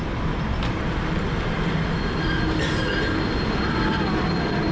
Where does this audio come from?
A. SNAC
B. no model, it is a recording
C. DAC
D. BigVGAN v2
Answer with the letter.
B